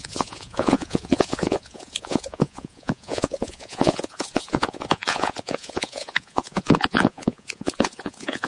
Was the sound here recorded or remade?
remade